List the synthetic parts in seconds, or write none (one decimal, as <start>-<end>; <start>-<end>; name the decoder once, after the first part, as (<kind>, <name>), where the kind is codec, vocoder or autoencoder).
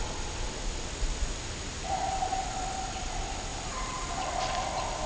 1.3-2.5 (vocoder, BigVGAN v2); 3.5-4.3